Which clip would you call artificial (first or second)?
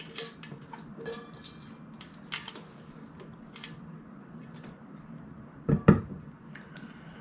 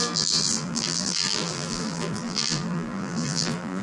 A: second